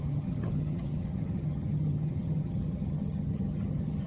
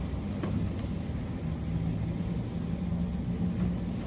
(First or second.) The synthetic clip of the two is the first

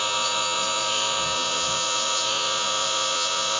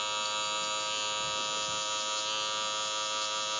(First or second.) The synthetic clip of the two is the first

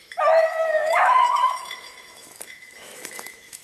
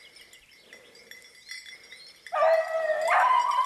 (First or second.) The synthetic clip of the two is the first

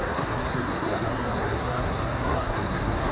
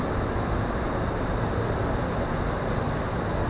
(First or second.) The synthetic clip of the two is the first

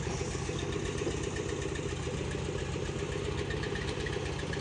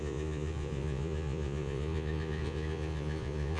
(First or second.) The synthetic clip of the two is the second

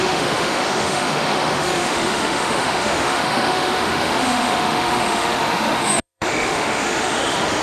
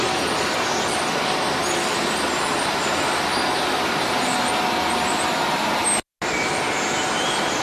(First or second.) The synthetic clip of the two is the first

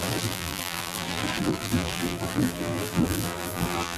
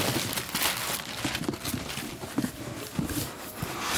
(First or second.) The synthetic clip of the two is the first